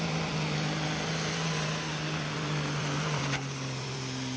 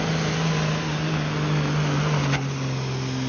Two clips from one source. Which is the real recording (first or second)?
second